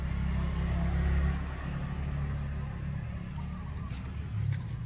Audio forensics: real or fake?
real